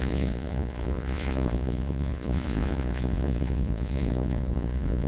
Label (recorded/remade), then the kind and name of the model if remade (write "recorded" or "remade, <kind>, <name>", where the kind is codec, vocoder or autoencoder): remade, vocoder, Vocos